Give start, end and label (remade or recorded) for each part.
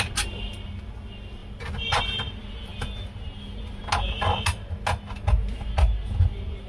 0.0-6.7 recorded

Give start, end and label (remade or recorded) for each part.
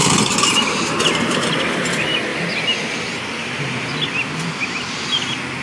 0.0-1.6 remade; 1.6-5.6 recorded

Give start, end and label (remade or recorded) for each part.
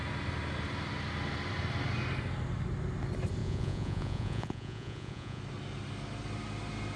0.0-3.4 recorded; 3.4-5.4 remade; 5.4-7.0 recorded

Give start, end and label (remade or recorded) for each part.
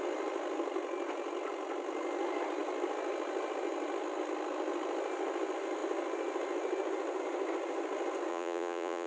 0.0-8.3 recorded; 8.3-9.1 remade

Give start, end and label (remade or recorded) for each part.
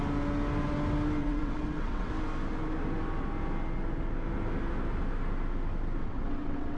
0.0-1.2 recorded; 1.2-2.1 remade; 2.1-6.0 recorded; 6.0-6.8 remade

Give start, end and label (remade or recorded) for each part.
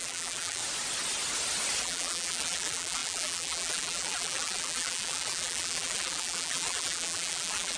0.0-0.6 remade; 0.6-1.8 recorded; 1.8-7.8 remade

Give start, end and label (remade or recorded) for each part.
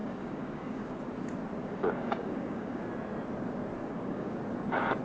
0.0-1.0 remade; 1.0-1.6 recorded; 1.6-2.8 remade; 2.8-3.8 recorded; 3.8-4.4 remade; 4.4-5.0 recorded